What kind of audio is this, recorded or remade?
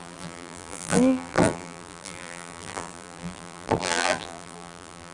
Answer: remade